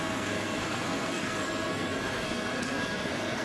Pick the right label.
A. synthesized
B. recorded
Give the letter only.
A